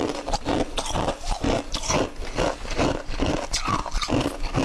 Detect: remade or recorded recorded